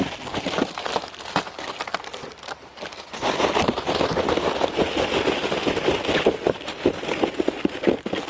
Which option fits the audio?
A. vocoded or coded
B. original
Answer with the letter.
B